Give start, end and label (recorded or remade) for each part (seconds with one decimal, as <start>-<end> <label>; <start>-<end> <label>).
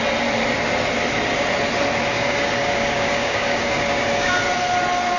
0.0-2.1 recorded; 2.1-4.4 remade; 4.4-5.2 recorded